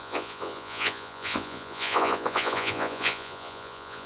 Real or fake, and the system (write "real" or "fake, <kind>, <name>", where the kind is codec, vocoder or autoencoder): fake, vocoder, Vocos